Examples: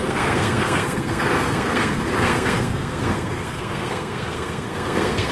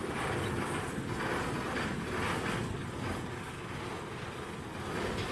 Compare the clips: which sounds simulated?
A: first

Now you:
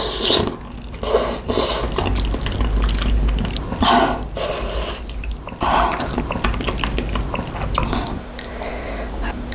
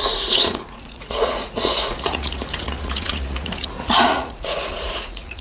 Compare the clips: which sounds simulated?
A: second